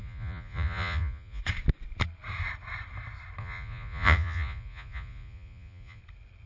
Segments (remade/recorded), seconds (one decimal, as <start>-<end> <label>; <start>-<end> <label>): 0.0-1.4 remade; 1.4-3.4 recorded; 3.4-6.0 remade; 6.0-6.5 recorded